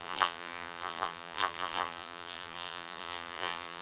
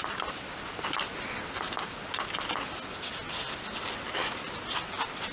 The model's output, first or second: first